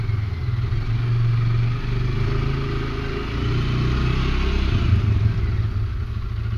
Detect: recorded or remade recorded